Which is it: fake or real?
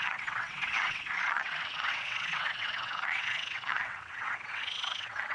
fake